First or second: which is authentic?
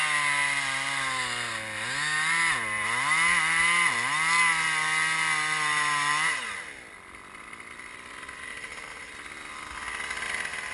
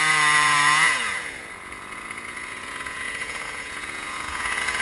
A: first